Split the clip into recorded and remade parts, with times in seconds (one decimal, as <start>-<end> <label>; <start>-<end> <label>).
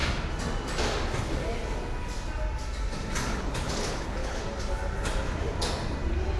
0.0-3.3 recorded; 3.3-4.4 remade; 4.4-6.4 recorded